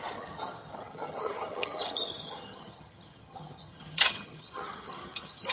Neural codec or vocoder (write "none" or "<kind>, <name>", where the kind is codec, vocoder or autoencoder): vocoder, HiFi-GAN